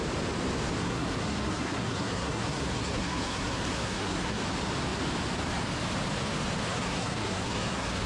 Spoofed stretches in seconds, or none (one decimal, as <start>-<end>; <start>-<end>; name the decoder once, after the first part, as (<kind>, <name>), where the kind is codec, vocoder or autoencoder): 0.8-4.4 (codec, SNAC); 6.7-8.1